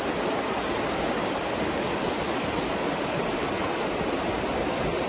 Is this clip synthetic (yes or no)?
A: no